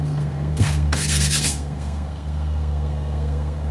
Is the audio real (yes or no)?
no